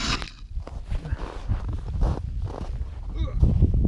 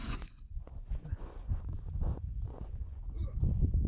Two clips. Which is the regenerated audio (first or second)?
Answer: second